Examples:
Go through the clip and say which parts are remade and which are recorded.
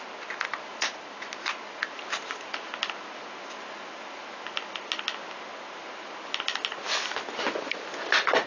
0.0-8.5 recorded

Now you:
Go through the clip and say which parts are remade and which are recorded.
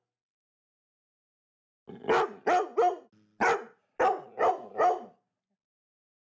0.0-6.3 recorded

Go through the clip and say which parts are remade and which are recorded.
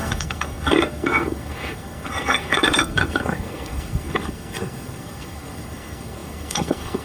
0.0-7.0 remade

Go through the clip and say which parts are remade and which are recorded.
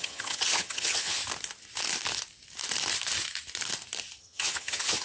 0.0-1.2 remade; 1.2-4.2 recorded; 4.2-5.0 remade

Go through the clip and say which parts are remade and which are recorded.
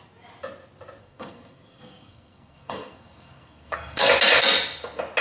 0.0-1.0 recorded; 1.0-4.1 remade; 4.1-5.2 recorded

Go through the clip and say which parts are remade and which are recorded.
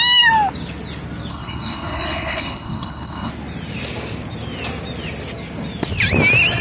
0.0-1.3 recorded; 1.3-3.3 remade; 3.3-6.6 recorded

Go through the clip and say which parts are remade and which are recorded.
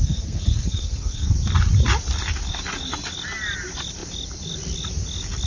0.0-1.3 remade; 1.3-5.5 recorded